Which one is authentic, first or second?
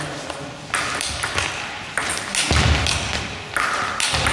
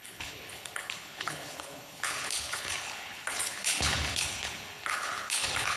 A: first